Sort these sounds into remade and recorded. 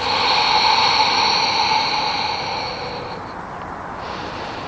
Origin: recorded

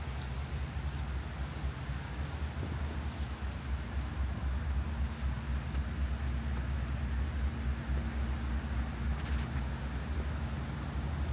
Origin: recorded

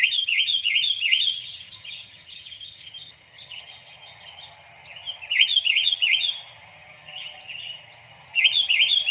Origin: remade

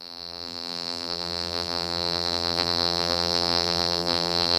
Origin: remade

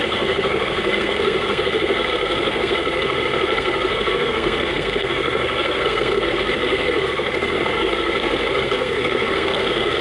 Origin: remade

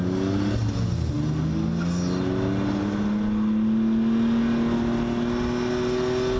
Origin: recorded